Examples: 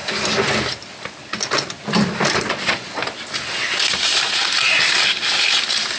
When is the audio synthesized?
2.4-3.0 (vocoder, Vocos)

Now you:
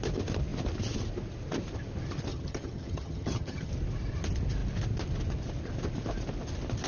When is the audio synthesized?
2.3-3.7 (vocoder, HiFi-GAN)

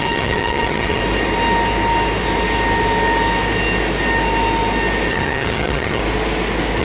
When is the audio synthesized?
0.0-1.0 (vocoder, HiFi-GAN); 5.1-6.0